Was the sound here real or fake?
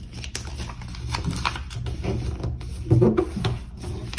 real